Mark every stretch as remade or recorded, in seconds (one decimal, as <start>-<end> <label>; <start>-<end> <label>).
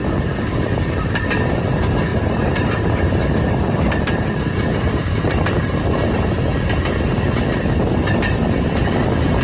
0.0-2.1 recorded; 2.1-7.0 remade; 7.0-9.4 recorded